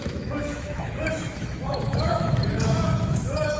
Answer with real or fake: fake